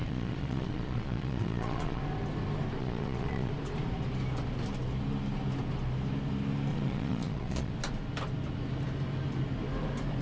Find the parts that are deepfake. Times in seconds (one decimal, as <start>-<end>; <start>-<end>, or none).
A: 0.0-2.0; 2.8-3.5; 6.7-7.7